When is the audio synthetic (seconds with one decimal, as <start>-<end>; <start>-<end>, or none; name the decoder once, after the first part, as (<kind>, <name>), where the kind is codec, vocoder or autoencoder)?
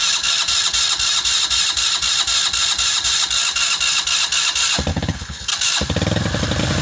4.9-5.5 (codec, HILCodec)